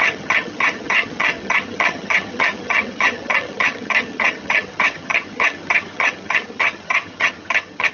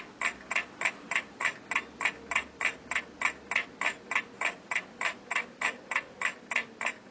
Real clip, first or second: second